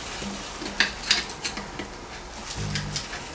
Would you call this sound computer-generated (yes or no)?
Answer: no